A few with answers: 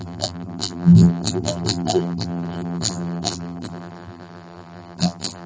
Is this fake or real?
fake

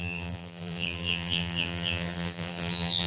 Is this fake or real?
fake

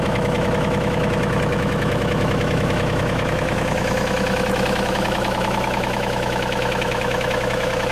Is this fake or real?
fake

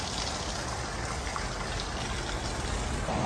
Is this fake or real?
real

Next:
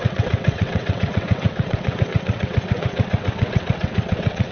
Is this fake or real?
fake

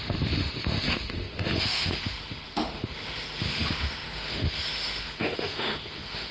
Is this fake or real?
fake